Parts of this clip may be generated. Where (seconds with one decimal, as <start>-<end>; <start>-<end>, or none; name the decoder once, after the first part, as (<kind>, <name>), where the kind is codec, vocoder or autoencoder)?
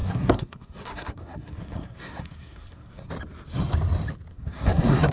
0.0-3.1 (codec, SNAC); 4.3-5.1